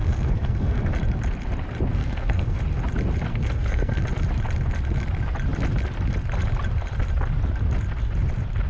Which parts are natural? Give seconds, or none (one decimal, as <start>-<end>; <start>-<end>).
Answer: 0.9-1.9; 2.6-3.3; 4.0-8.7